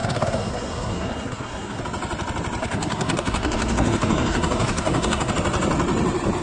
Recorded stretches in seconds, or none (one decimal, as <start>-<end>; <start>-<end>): 1.8-2.6; 5.3-6.4